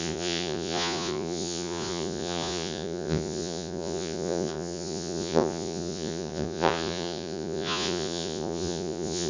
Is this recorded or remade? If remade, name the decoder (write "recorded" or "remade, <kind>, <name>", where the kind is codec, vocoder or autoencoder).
remade, vocoder, Vocos